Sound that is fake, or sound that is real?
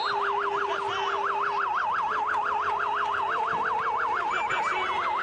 real